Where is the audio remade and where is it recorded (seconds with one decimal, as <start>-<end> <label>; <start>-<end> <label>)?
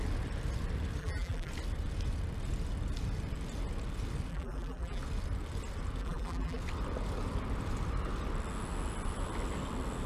0.0-1.0 recorded; 1.0-1.5 remade; 1.5-4.3 recorded; 4.3-5.0 remade; 5.0-6.0 recorded; 6.0-6.6 remade; 6.6-10.1 recorded